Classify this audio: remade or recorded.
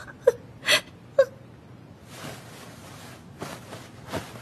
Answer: recorded